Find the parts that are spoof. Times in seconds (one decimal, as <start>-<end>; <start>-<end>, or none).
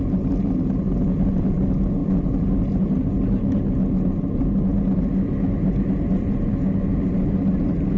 none